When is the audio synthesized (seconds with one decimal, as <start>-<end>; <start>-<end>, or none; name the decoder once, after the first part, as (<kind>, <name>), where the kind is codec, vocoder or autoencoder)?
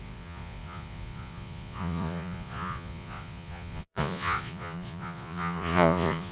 0.0-6.3 (vocoder, Vocos)